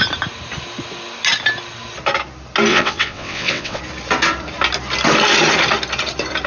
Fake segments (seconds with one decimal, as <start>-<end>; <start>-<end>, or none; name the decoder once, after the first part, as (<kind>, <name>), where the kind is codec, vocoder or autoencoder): 2.7-3.8 (vocoder, WaveNeXt)